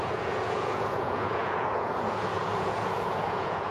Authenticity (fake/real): fake